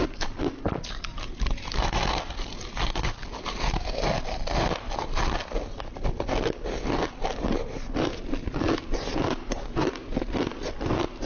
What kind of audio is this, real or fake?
real